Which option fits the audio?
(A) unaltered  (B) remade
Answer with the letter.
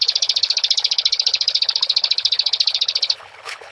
B